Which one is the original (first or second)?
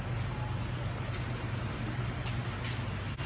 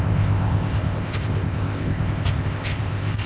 first